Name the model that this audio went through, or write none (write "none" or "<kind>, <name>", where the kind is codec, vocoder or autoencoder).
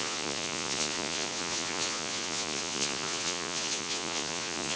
vocoder, Vocos